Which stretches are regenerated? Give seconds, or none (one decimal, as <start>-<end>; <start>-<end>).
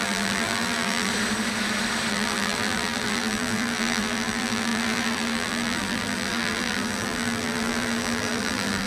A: 0.0-1.1; 2.1-8.9